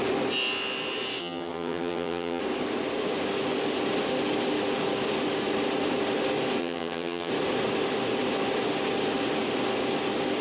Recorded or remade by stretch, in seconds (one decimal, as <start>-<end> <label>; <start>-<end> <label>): 0.0-1.2 recorded; 1.2-2.4 remade; 2.4-6.6 recorded; 6.6-7.3 remade; 7.3-10.4 recorded